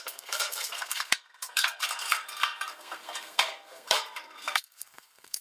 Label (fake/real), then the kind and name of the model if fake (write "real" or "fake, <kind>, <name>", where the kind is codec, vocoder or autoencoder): fake, codec, SNAC